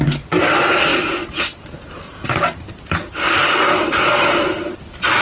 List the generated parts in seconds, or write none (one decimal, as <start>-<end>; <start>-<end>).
none